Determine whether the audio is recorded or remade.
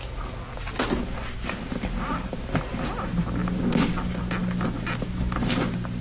recorded